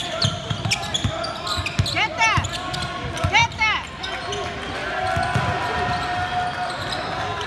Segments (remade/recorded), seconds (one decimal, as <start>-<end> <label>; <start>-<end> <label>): 0.0-7.5 recorded